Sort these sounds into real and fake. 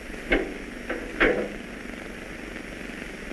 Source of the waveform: real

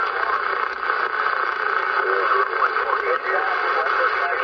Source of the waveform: real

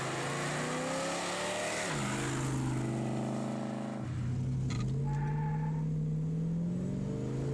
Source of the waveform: real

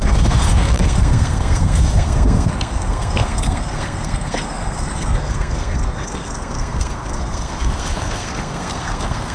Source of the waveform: fake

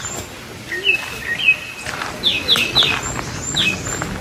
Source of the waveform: real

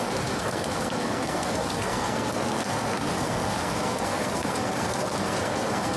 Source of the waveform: fake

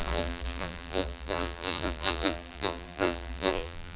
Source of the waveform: fake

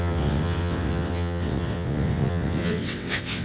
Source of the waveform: fake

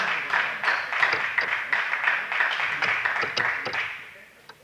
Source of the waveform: real